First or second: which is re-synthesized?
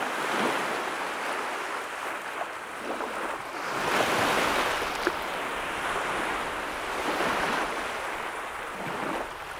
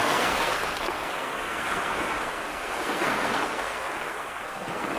second